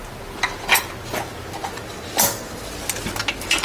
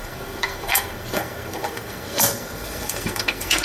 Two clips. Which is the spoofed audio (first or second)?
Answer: second